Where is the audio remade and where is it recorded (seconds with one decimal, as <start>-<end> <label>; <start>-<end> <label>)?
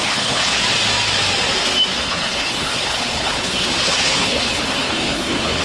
0.0-0.6 remade; 0.6-2.0 recorded; 2.0-5.6 remade